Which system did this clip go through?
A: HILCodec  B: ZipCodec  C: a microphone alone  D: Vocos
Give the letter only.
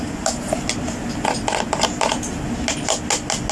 C